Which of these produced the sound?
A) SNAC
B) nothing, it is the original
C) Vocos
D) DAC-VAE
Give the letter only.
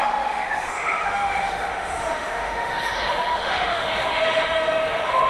D